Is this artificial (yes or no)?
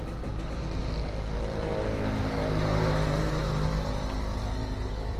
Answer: no